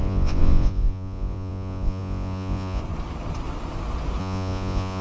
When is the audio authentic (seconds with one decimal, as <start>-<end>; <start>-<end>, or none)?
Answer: 2.8-4.2